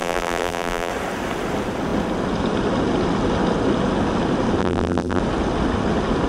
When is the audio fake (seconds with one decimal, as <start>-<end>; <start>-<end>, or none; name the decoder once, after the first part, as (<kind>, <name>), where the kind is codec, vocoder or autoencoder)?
0.0-0.9 (vocoder, BigVGAN v2); 4.6-5.2